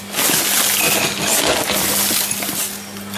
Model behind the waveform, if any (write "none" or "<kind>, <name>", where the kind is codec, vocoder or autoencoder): none